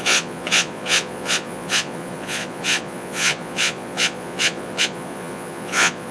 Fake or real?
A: fake